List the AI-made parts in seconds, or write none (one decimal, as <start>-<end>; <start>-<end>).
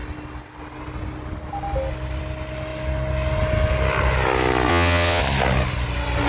4.7-5.2